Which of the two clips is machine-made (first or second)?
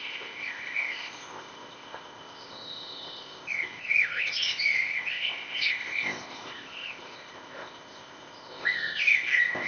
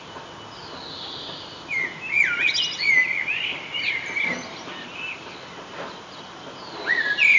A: first